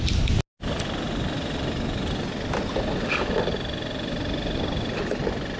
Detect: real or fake real